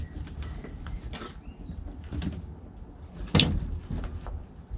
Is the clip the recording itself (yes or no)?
yes